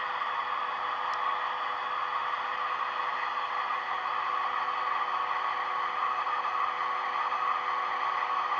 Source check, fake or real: real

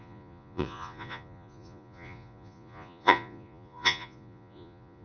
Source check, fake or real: fake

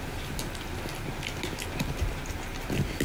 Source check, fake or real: real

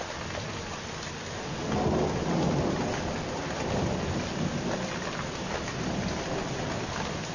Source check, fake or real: real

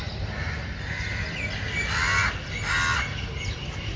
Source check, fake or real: real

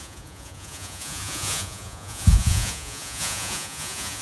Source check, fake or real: fake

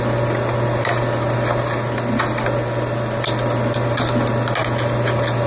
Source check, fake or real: real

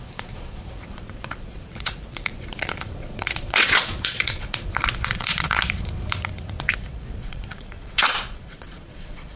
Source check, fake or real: fake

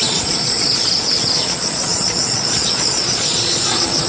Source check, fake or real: fake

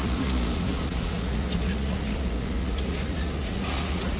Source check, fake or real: fake